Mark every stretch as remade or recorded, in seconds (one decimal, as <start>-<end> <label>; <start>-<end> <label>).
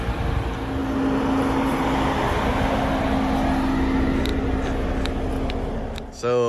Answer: 0.0-6.5 recorded